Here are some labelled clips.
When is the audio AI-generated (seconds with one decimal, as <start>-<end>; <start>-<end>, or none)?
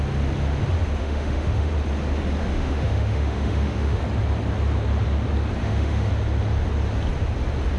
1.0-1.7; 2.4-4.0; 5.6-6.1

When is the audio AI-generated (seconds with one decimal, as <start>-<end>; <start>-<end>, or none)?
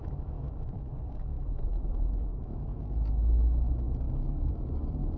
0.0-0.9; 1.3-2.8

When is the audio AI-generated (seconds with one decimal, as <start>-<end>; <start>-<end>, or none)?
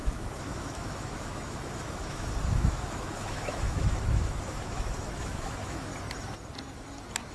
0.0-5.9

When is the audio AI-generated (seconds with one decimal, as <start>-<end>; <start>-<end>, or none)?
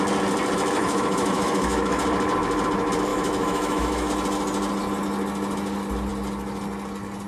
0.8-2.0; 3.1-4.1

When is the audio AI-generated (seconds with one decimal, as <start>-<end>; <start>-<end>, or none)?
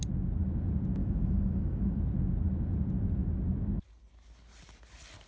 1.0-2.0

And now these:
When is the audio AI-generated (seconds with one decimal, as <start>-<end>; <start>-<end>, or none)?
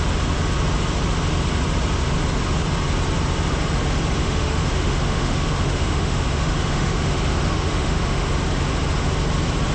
4.2-8.3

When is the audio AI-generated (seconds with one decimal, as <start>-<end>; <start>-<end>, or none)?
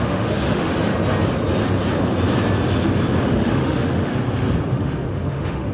0.0-0.7; 3.2-4.1; 4.7-5.7